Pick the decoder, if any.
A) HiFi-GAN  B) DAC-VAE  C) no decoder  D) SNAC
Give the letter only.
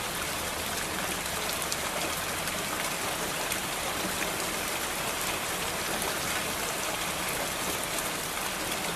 C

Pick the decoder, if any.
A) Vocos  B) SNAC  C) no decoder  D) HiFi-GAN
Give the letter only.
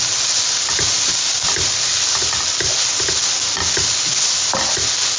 C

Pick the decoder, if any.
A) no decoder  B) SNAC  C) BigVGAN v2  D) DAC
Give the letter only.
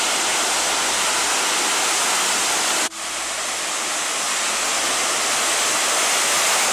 A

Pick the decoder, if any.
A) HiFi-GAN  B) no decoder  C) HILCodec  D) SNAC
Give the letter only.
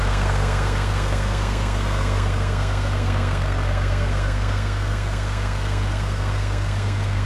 D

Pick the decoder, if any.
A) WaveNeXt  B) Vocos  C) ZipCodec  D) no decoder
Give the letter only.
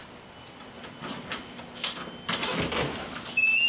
D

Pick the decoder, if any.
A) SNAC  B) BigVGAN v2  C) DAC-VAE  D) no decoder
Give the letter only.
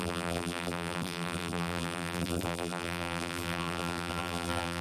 B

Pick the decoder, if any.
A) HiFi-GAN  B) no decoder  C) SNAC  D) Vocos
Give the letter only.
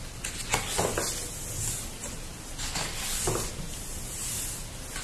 B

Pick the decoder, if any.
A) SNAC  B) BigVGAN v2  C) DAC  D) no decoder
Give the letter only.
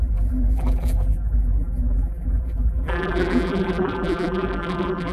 B